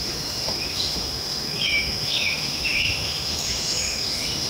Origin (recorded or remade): remade